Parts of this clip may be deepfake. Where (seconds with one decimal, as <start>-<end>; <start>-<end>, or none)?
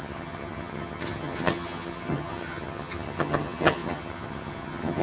0.0-5.0